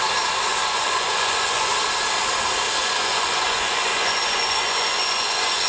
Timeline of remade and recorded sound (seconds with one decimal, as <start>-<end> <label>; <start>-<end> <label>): 0.0-0.5 recorded; 0.5-1.7 remade; 1.7-2.8 recorded; 2.8-5.7 remade